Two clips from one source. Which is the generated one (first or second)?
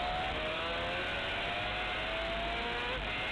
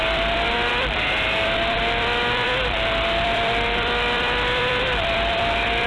second